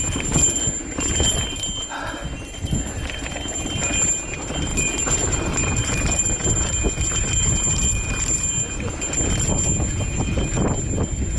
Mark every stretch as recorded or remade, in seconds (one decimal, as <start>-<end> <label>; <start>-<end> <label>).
0.0-4.7 recorded; 4.7-6.3 remade; 6.3-11.4 recorded